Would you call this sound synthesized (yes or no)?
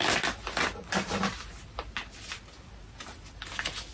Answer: no